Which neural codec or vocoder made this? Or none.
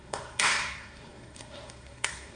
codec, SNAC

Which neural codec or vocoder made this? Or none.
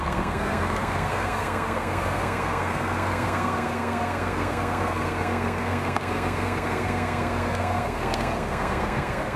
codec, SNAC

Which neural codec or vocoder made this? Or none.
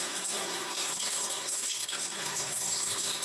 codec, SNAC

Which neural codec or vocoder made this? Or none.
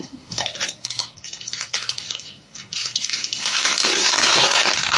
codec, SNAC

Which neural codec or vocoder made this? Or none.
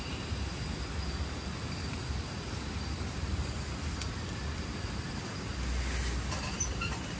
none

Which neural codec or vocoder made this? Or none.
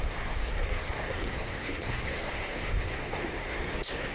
codec, SNAC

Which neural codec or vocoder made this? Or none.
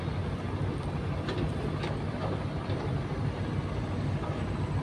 none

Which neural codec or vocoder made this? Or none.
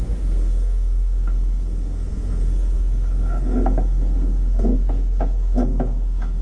codec, SNAC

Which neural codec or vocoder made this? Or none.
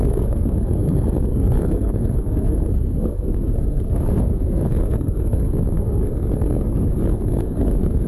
codec, SNAC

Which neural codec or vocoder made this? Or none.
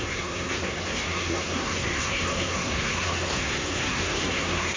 codec, SNAC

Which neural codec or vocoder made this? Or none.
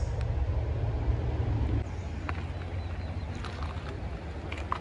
none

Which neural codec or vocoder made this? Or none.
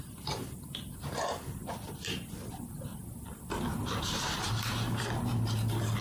none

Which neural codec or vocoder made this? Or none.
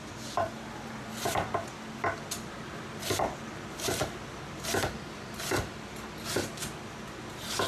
none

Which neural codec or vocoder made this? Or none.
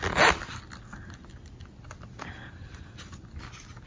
none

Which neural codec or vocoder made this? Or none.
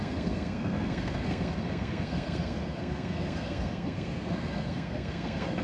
codec, SNAC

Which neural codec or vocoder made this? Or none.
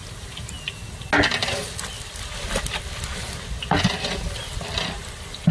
none